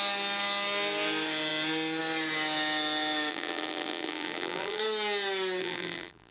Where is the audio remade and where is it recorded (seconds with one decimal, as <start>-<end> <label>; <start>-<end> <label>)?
0.0-3.3 recorded; 3.3-4.8 remade; 4.8-5.6 recorded; 5.6-6.3 remade